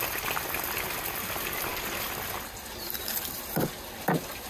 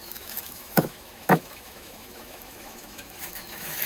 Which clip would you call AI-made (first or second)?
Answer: second